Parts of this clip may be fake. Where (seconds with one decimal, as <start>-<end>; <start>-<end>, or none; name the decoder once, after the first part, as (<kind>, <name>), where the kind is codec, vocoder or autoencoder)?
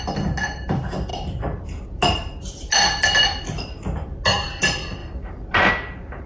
1.1-2.7 (vocoder, BigVGAN v2)